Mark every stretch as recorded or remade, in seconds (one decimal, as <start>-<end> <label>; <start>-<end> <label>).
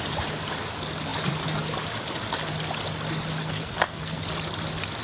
0.0-3.4 recorded; 3.4-4.2 remade; 4.2-5.0 recorded